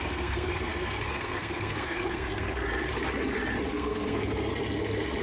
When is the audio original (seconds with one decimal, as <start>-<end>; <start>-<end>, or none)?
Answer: 2.6-3.7; 4.5-5.2